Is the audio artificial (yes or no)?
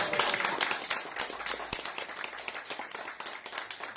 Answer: no